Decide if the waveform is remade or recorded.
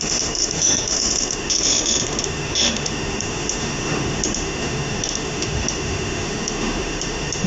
remade